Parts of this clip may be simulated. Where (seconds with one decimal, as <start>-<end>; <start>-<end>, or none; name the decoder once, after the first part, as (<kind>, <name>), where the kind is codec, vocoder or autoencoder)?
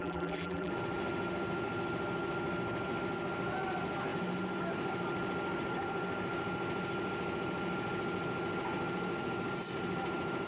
0.0-0.7 (vocoder, BigVGAN v2)